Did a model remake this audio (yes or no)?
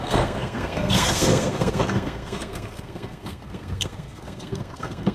yes